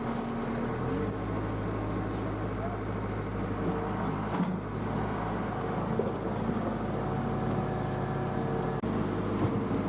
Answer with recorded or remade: recorded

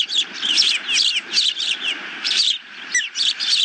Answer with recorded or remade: remade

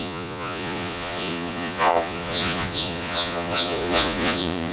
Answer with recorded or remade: remade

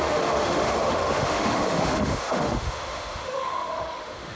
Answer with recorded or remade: remade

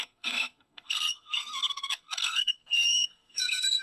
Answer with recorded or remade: remade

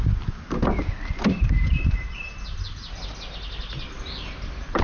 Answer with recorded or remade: recorded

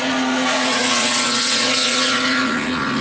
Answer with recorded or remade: remade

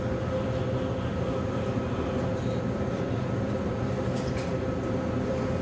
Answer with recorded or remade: recorded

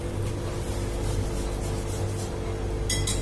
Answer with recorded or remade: recorded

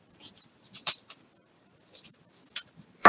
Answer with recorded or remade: remade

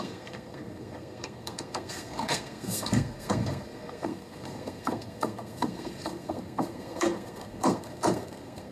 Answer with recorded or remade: remade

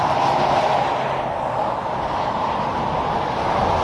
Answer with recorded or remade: recorded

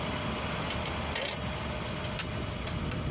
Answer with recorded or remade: recorded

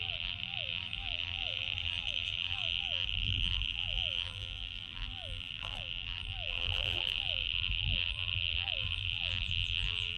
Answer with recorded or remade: remade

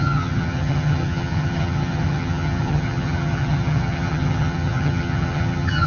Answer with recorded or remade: remade